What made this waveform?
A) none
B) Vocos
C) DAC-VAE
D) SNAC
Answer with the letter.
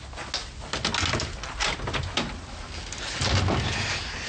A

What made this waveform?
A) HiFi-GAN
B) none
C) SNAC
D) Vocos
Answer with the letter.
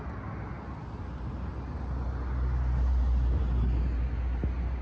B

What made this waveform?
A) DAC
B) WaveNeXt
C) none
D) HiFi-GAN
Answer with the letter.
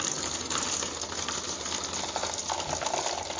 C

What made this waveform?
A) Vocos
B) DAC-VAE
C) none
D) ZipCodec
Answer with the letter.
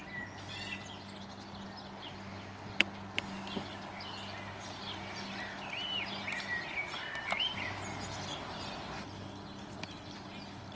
C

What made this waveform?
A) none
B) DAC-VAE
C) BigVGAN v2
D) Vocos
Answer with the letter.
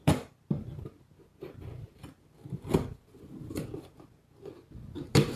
A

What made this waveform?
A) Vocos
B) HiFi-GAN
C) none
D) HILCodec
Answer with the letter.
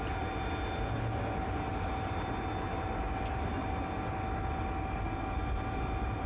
C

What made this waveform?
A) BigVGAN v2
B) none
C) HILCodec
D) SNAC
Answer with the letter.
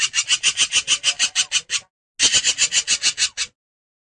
B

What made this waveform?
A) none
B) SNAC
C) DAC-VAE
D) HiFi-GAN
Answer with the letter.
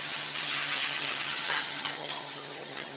D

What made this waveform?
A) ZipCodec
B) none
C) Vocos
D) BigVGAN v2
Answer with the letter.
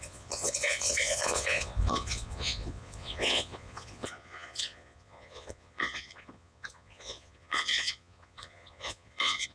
C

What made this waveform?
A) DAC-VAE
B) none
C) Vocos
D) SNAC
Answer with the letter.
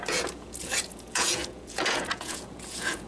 C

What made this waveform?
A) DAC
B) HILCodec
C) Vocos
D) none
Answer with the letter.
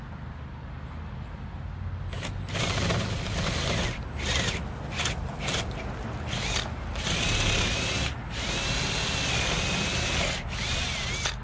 D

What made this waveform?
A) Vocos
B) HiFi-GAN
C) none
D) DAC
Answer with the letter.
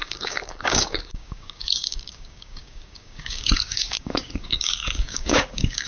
D